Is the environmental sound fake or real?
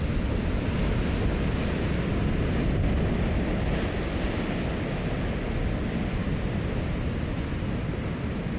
real